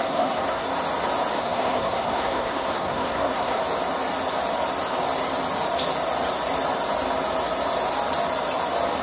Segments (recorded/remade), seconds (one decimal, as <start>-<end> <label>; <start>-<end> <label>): 0.0-0.7 remade; 0.7-1.4 recorded; 1.4-3.6 remade; 3.6-9.0 recorded